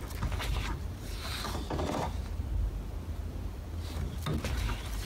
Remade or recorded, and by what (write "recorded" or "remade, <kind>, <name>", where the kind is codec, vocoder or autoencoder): recorded